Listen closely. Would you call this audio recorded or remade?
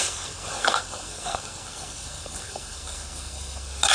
remade